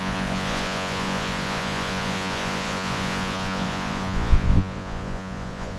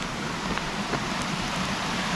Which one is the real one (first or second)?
second